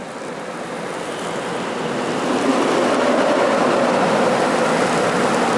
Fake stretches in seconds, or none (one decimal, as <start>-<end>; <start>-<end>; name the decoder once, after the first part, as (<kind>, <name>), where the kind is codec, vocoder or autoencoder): 2.5-4.6 (vocoder, BigVGAN v2)